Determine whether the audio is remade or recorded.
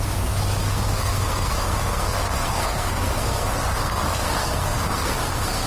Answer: remade